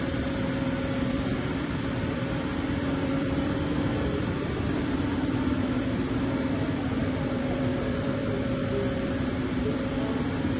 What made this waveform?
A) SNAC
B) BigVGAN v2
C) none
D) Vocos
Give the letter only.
B